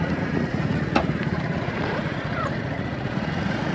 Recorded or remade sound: remade